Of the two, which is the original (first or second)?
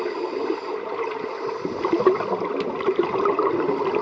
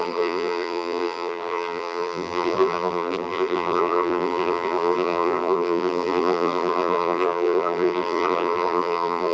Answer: first